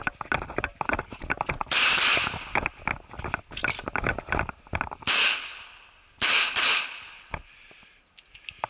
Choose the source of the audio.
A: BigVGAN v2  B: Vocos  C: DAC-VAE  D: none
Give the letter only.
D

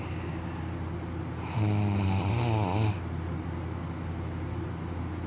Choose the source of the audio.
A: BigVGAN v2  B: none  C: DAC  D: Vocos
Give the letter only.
B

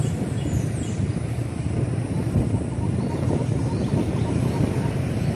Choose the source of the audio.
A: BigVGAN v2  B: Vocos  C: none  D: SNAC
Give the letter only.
A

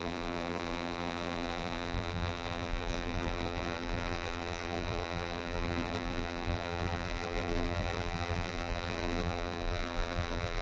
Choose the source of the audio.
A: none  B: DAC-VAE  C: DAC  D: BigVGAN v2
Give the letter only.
D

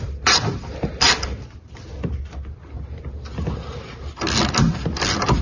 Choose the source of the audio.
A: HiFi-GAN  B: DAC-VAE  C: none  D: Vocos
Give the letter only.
C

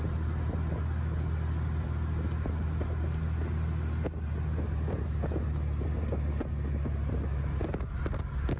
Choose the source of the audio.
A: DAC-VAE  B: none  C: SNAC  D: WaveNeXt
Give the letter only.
B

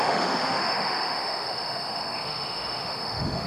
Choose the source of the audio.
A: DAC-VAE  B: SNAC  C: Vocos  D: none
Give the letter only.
A